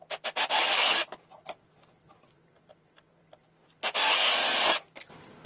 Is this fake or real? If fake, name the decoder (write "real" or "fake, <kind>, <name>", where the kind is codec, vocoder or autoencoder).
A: real